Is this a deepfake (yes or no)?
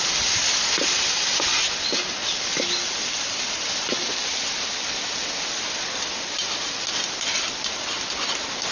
no